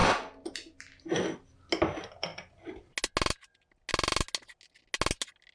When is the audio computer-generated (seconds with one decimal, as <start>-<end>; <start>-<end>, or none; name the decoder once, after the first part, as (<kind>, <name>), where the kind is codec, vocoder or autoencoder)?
none